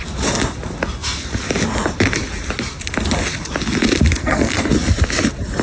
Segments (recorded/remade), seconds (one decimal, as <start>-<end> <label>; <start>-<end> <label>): 0.0-4.2 recorded; 4.2-4.7 remade; 4.7-5.6 recorded